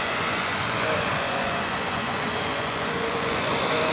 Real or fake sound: fake